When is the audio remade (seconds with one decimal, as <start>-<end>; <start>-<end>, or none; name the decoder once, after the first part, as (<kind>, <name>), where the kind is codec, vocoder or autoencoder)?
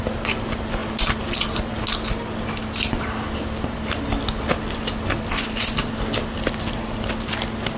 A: none